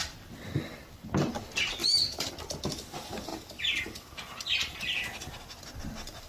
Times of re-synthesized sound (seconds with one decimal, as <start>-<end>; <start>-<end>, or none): 1.8-2.3